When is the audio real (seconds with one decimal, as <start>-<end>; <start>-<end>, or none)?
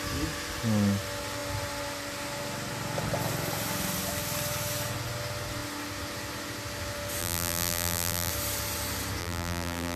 0.0-7.2; 8.3-9.2